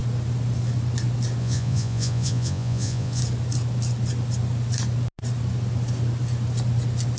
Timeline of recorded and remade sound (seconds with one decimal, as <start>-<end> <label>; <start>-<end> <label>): 0.0-1.4 recorded; 1.4-3.2 remade; 3.2-7.2 recorded